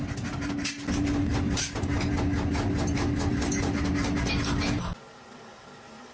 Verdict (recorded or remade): recorded